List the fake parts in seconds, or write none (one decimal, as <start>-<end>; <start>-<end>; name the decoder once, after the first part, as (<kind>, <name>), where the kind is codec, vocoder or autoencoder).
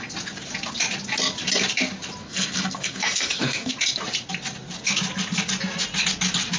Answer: 2.2-3.7 (codec, SNAC)